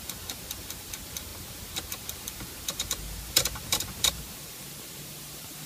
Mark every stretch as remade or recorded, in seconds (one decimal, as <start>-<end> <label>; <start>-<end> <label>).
0.0-5.7 remade